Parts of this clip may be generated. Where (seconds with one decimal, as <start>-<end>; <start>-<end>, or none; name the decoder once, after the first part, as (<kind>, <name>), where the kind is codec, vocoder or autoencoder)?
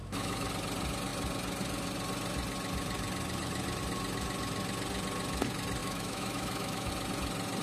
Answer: 0.0-0.5 (autoencoder, DAC-VAE); 5.8-6.9